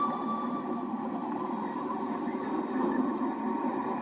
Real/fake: fake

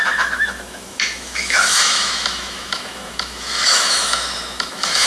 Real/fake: fake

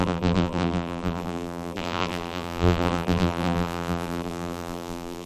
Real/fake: fake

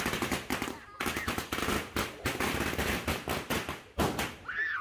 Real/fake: real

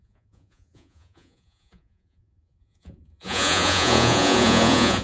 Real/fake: fake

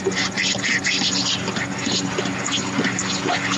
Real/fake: real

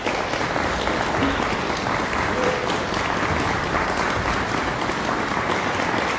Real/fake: real